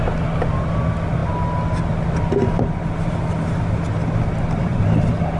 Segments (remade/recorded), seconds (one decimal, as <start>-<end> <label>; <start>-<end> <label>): 0.0-5.4 recorded